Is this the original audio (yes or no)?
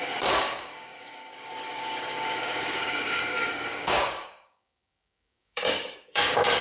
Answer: no